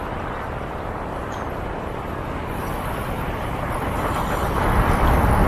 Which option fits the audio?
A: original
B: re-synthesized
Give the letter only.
B